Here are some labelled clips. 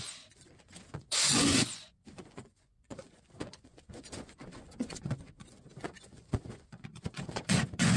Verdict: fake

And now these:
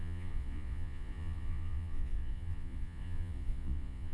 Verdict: fake